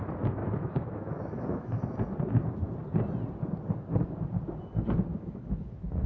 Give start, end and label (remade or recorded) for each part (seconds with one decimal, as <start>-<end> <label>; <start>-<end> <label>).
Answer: 0.0-0.4 recorded; 0.4-1.9 remade; 1.9-5.1 recorded; 5.1-5.6 remade; 5.6-6.1 recorded